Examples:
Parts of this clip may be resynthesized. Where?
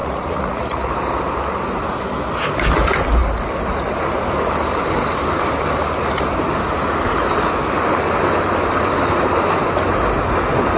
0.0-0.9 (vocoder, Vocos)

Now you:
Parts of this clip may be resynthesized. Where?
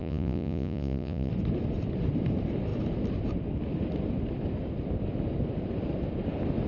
0.0-1.3 (vocoder, Vocos)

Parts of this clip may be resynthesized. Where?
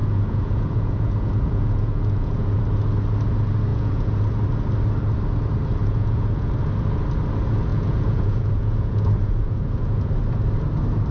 0.0-2.6 (vocoder, Vocos); 3.7-4.2; 5.8-6.5; 7.7-10.1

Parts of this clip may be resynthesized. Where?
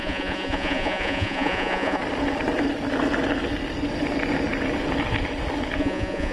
0.0-2.0 (vocoder, Vocos); 5.8-6.3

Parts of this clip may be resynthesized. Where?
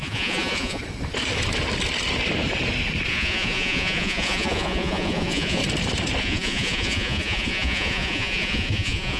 0.0-0.8 (vocoder, Vocos); 3.1-5.6; 6.2-9.2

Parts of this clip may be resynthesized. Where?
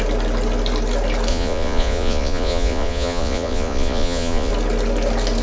1.3-4.5 (vocoder, Vocos)